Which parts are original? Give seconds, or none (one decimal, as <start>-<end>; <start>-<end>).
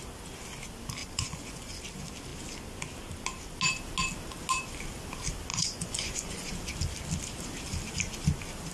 0.0-1.0; 1.8-5.5; 6.5-8.7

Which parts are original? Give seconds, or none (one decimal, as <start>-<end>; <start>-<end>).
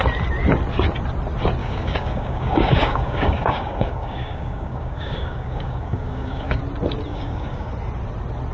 0.0-1.6; 6.6-7.1; 7.7-8.5